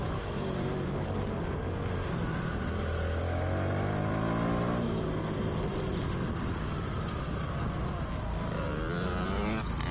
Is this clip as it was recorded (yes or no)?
yes